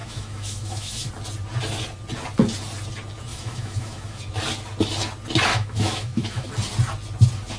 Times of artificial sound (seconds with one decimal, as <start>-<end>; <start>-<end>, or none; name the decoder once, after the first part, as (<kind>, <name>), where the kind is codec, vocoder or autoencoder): 0.0-1.1 (autoencoder, DAC-VAE); 3.3-4.2; 5.5-6.5